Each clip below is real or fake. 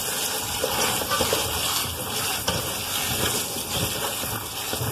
real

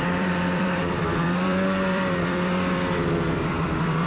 fake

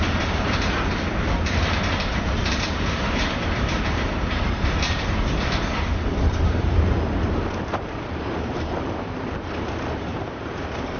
fake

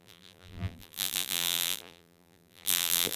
fake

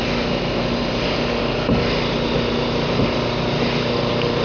real